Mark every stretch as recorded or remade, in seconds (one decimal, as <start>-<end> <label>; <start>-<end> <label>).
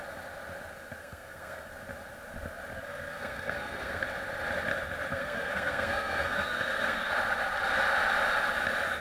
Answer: 0.0-1.0 recorded; 1.0-1.7 remade; 1.7-2.7 recorded; 2.7-4.0 remade; 4.0-5.1 recorded; 5.1-7.1 remade; 7.1-9.0 recorded